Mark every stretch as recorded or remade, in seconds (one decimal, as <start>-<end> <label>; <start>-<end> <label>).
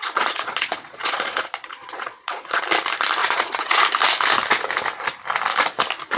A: 0.0-2.6 remade; 2.6-3.2 recorded; 3.2-3.8 remade; 3.8-6.2 recorded